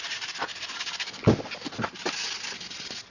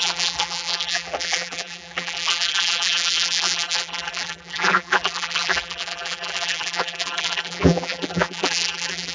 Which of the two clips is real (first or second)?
first